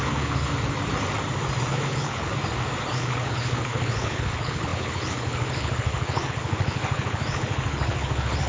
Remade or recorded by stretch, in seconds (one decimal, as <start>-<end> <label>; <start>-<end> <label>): 0.0-0.5 remade; 0.5-1.7 recorded; 1.7-2.3 remade; 2.3-2.9 recorded; 2.9-8.5 remade